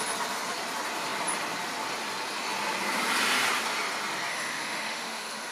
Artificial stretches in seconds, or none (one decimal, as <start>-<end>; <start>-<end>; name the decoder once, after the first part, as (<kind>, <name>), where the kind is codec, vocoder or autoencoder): 4.3-5.5 (autoencoder, DAC-VAE)